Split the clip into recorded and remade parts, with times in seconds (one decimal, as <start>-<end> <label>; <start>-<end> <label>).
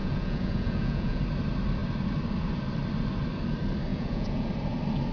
0.0-1.2 remade; 1.2-3.9 recorded; 3.9-4.5 remade; 4.5-5.1 recorded